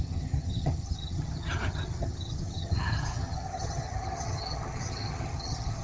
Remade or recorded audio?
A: remade